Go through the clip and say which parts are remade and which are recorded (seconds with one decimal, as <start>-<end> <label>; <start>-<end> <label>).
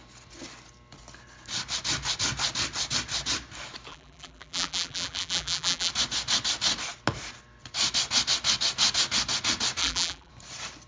0.0-3.9 recorded; 3.9-5.9 remade; 5.9-9.8 recorded; 9.8-10.3 remade; 10.3-10.9 recorded